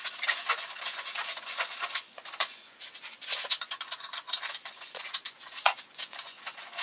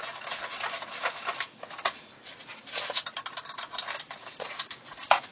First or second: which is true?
second